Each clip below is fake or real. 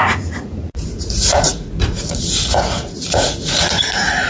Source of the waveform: fake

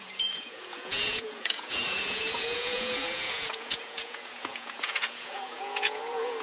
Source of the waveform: fake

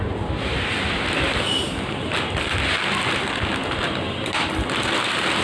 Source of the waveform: real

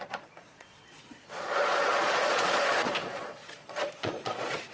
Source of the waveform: fake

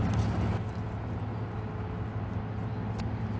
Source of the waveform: real